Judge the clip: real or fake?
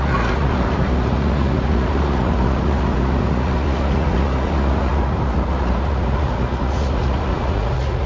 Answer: fake